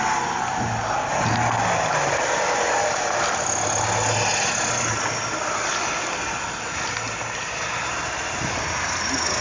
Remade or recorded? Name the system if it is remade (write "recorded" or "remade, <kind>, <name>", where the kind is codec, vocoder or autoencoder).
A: recorded